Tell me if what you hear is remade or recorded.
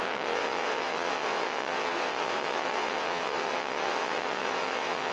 remade